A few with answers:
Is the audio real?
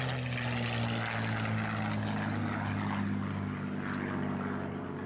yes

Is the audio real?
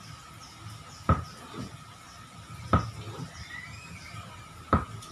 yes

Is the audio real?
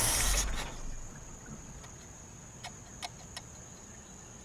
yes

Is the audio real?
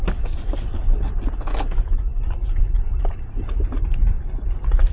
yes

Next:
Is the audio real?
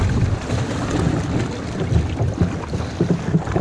no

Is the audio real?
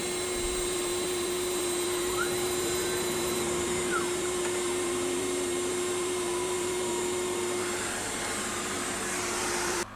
no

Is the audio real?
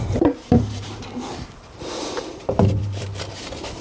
no